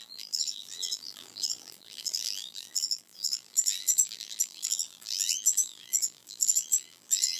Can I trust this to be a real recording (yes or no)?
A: no